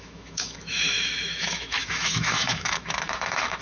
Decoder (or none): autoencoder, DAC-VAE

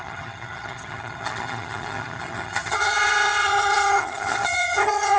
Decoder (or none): vocoder, HiFi-GAN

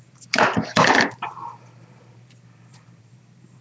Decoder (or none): vocoder, BigVGAN v2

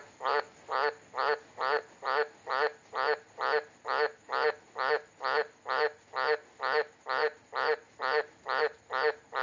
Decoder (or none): none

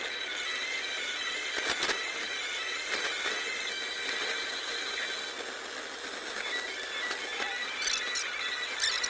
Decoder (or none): none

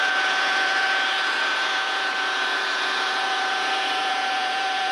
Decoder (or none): vocoder, Vocos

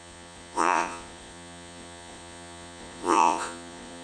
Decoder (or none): vocoder, Vocos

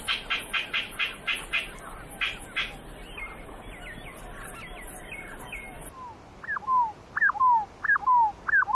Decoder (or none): none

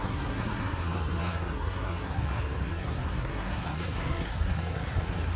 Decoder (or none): codec, SNAC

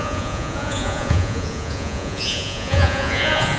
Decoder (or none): vocoder, Vocos